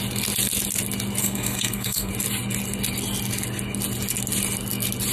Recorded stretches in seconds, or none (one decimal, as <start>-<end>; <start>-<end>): 0.0-1.2; 2.1-5.1